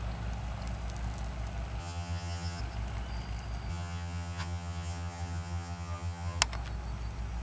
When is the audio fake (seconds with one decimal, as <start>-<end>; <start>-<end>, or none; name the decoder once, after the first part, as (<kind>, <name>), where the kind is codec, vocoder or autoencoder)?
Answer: 1.8-2.6 (vocoder, HiFi-GAN); 3.7-6.4